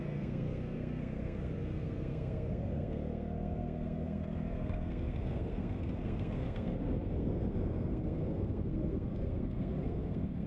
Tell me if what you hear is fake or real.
fake